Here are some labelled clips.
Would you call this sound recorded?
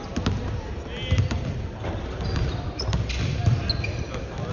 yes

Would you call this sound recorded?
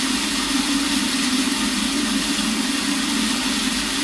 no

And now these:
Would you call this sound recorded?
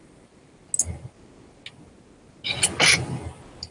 yes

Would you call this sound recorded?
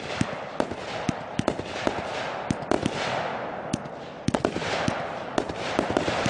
yes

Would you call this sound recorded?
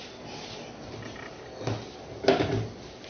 yes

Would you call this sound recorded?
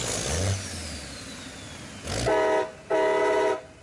yes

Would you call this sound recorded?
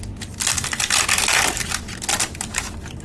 yes